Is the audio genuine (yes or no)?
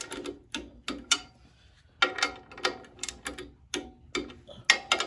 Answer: yes